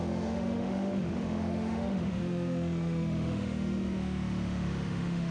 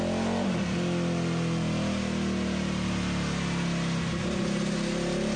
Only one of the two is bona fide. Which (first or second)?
second